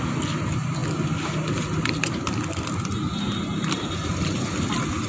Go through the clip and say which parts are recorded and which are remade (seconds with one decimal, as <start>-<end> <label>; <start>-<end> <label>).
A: 0.0-5.1 recorded